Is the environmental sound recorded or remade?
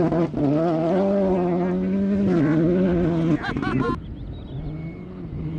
recorded